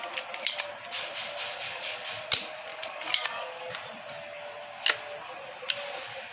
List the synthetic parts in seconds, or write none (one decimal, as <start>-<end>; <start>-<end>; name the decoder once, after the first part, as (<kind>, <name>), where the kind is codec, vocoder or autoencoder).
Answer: 1.5-2.1 (codec, DAC); 2.7-3.7